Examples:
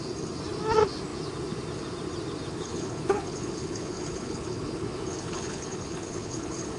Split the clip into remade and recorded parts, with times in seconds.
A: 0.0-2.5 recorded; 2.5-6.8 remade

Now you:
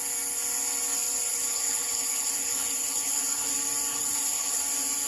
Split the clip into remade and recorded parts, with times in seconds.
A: 0.0-1.3 recorded; 1.3-3.5 remade; 3.5-3.9 recorded; 3.9-4.6 remade; 4.6-5.1 recorded

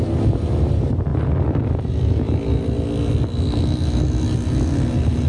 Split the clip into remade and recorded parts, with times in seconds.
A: 0.0-5.3 recorded

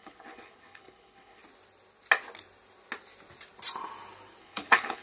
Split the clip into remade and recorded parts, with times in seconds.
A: 0.0-1.4 remade; 1.4-4.4 recorded; 4.4-5.0 remade

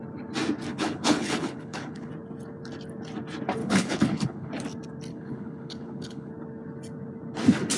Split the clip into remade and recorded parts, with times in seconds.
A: 0.0-0.7 recorded; 0.7-2.1 remade; 2.1-3.6 recorded; 3.6-4.5 remade; 4.5-5.1 recorded; 5.1-6.3 remade; 6.3-7.8 recorded

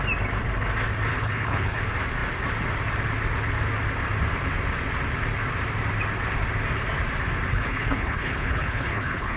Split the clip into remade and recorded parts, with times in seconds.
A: 0.0-1.1 recorded; 1.1-1.8 remade; 1.8-7.5 recorded; 7.5-9.4 remade